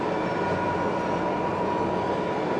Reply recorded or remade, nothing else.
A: recorded